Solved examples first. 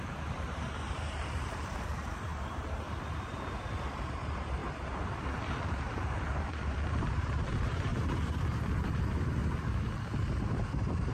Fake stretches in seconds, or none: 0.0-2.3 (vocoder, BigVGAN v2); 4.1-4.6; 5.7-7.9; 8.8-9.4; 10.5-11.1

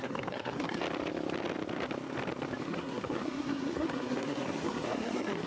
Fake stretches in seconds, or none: 0.0-0.8 (codec, SNAC); 2.6-5.5

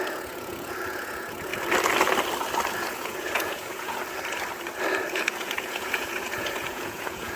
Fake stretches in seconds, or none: 0.0-1.5 (vocoder, Vocos); 2.7-4.0; 5.1-7.4

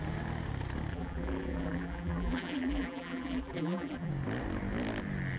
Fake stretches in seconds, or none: 0.9-4.1 (vocoder, BigVGAN v2)